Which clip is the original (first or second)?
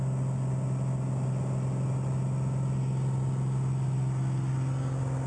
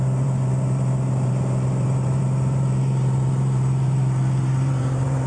first